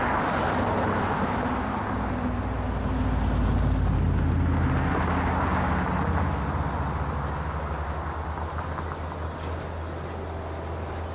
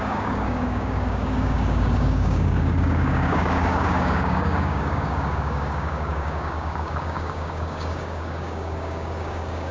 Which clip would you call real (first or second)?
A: first